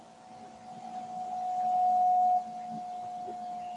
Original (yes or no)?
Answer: yes